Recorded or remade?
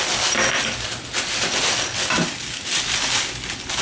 recorded